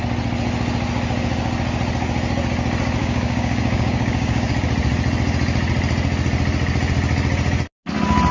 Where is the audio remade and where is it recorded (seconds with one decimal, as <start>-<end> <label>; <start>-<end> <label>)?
0.0-3.0 recorded; 3.0-4.5 remade; 4.5-8.3 recorded